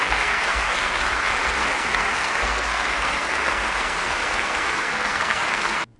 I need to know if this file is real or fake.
fake